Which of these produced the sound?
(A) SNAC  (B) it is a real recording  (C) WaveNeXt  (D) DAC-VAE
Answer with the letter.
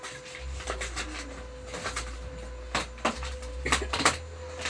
B